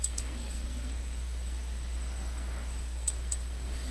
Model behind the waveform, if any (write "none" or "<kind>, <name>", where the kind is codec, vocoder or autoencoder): codec, SNAC